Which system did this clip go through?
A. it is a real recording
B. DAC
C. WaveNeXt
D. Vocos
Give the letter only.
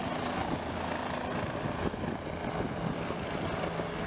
A